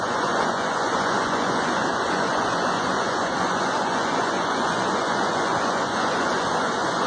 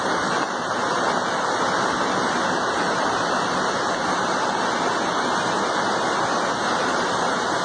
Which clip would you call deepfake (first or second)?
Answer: first